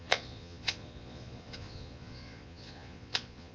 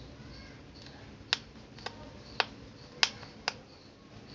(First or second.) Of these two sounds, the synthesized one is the first